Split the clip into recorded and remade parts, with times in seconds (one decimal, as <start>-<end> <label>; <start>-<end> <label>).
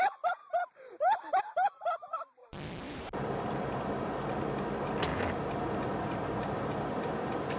0.0-0.4 recorded; 0.4-1.4 remade; 1.4-2.4 recorded; 2.4-4.3 remade; 4.3-5.1 recorded; 5.1-7.6 remade